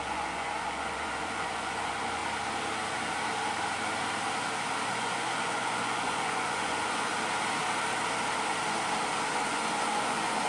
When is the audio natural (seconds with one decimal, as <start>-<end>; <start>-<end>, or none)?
2.2-4.9; 7.1-9.5